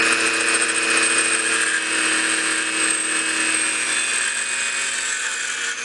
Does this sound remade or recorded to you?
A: recorded